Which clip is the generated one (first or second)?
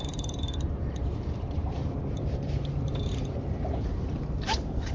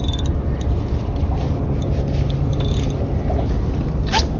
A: first